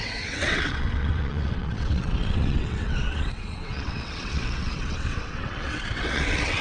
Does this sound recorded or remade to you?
remade